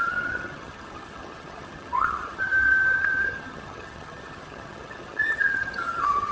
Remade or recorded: remade